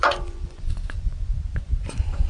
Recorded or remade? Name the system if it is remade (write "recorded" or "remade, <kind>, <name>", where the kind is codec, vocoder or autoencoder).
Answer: remade, vocoder, Vocos